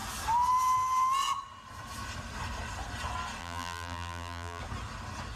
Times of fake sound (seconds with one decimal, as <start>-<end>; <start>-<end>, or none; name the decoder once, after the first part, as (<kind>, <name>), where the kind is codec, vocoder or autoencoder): 3.4-4.6 (vocoder, BigVGAN v2)